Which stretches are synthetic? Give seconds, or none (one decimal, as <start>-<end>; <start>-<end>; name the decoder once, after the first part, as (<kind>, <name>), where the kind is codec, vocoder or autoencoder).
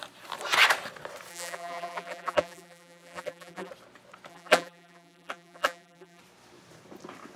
1.3-3.7 (vocoder, BigVGAN v2); 4.3-6.2